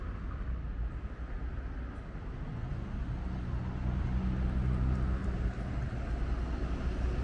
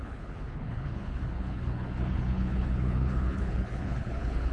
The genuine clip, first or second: first